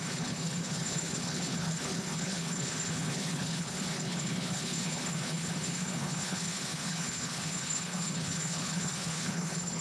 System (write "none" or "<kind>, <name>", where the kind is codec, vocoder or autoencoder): codec, HILCodec